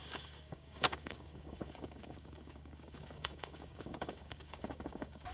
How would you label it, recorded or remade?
remade